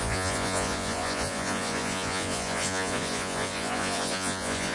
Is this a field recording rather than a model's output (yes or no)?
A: no